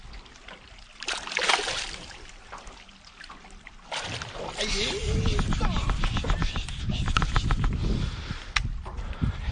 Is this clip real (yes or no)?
yes